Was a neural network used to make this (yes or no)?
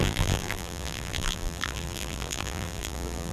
yes